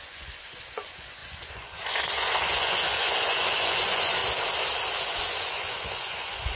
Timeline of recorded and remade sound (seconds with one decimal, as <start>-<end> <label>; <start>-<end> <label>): 0.0-4.2 remade; 4.2-5.0 recorded; 5.0-6.6 remade